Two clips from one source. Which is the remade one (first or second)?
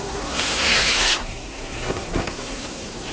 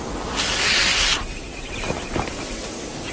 first